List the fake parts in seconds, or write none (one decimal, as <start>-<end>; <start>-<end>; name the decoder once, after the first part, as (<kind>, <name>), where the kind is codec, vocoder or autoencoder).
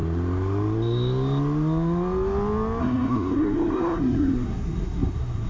2.8-5.5 (codec, SNAC)